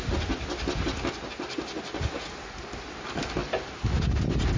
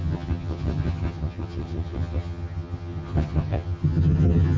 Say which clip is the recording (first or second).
first